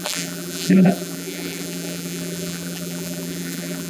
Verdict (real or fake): fake